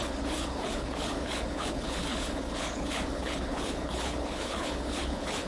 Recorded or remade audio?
remade